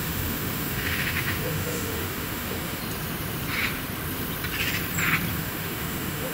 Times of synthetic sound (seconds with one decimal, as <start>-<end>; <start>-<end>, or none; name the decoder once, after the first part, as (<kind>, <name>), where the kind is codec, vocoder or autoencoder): 0.0-2.8 (autoencoder, DAC-VAE); 5.3-6.3